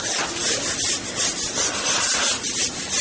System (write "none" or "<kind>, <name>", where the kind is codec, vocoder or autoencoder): none